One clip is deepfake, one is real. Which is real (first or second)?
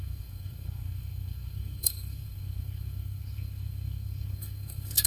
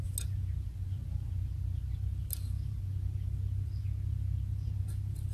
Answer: second